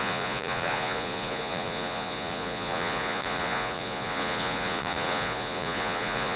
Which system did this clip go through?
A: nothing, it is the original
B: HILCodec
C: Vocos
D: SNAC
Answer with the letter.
C